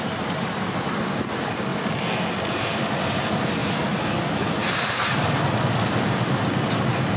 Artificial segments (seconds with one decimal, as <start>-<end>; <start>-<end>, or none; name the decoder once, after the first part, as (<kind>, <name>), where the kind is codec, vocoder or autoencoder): 0.0-1.7 (vocoder, BigVGAN v2); 2.5-3.6; 4.9-7.2